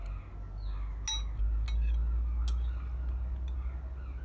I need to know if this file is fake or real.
real